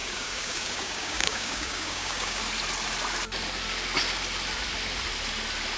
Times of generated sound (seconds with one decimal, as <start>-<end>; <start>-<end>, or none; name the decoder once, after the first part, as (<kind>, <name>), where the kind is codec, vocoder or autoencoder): 0.0-2.4 (codec, DAC)